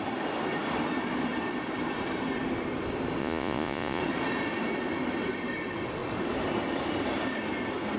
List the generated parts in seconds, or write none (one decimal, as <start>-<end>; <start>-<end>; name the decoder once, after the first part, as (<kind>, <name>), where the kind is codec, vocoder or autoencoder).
3.2-4.0 (vocoder, Vocos)